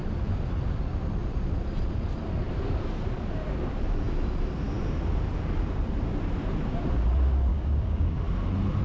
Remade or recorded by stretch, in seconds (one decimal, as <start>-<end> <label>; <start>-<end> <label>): 0.0-7.5 recorded; 7.5-8.2 remade; 8.2-8.8 recorded